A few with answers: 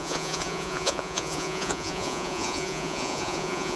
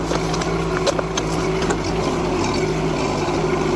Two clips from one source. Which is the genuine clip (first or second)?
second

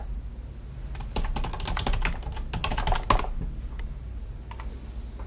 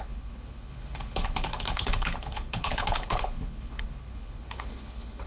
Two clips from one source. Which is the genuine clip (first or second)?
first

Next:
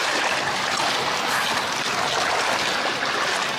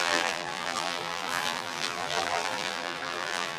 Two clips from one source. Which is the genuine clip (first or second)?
first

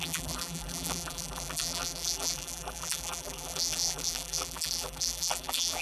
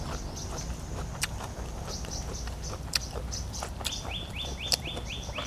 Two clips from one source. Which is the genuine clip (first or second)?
second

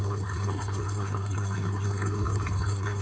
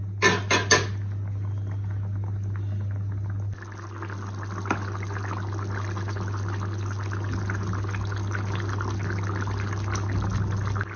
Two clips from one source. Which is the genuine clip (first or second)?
second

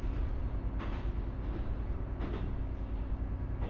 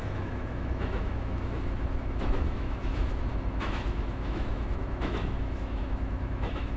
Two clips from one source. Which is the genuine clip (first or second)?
first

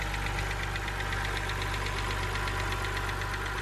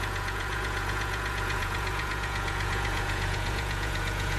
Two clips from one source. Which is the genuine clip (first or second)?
first